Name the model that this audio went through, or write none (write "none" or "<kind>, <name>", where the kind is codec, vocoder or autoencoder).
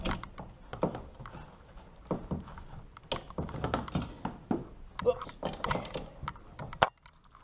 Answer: none